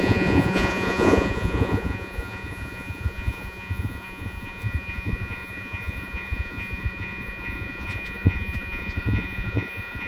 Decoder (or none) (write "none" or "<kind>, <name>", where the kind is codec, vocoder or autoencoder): vocoder, Vocos